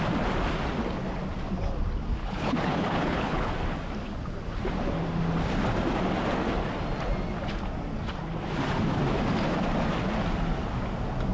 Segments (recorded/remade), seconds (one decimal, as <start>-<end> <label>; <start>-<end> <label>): 0.0-2.2 recorded; 2.2-3.5 remade; 3.5-11.3 recorded